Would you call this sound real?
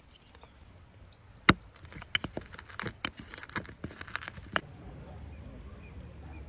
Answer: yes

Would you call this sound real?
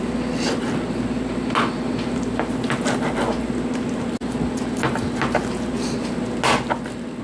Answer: yes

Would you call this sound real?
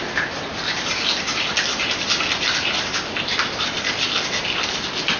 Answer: yes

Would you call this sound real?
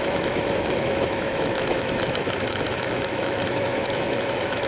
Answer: no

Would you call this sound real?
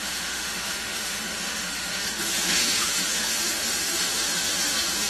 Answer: no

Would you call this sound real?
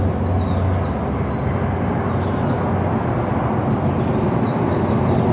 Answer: yes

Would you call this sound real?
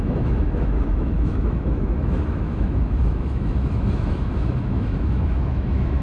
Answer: no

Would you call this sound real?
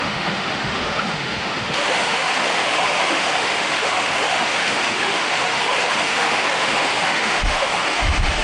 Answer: no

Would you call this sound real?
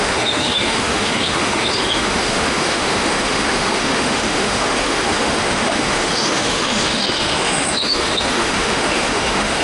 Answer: no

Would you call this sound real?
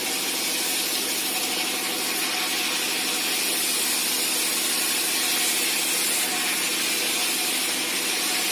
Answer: yes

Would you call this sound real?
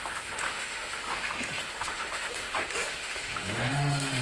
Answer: no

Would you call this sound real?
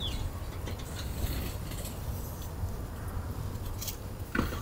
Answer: yes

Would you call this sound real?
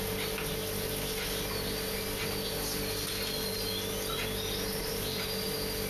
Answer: yes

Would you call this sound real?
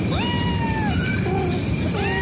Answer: yes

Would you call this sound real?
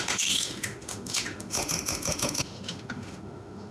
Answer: no